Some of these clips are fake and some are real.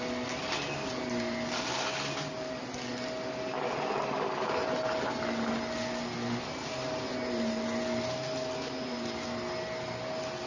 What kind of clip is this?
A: real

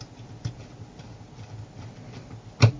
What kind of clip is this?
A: real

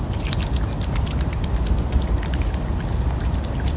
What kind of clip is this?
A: real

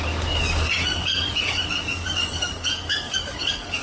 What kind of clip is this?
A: fake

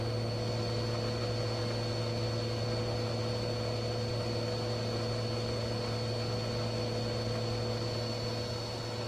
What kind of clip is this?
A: real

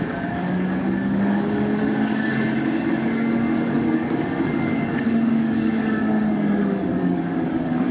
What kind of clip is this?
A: fake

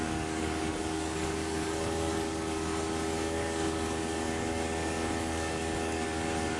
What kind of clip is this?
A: fake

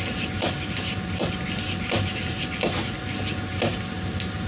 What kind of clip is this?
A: real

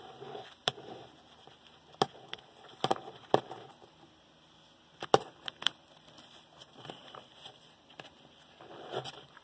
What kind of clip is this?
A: real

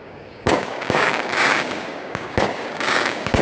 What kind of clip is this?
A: fake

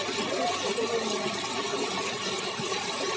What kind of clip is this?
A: real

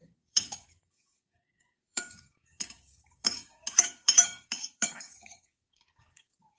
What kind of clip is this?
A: fake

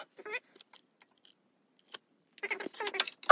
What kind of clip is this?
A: real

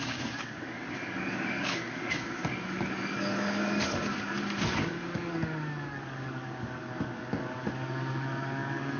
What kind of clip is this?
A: fake